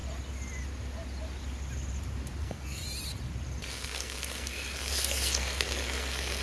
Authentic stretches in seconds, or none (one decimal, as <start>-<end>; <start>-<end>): 0.0-2.4; 2.8-3.7